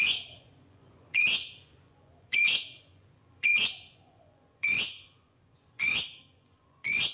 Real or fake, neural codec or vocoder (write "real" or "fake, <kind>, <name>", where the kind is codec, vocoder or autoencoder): fake, vocoder, Vocos